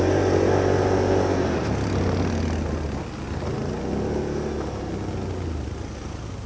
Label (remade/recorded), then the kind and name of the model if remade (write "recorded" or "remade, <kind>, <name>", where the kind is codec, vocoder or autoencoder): recorded